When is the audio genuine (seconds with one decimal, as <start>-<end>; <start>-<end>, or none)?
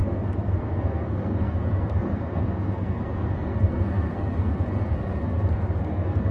none